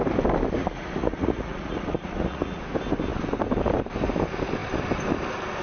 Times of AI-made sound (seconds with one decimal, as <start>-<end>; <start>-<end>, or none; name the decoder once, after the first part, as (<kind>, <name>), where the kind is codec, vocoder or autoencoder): 0.6-2.6 (vocoder, Vocos)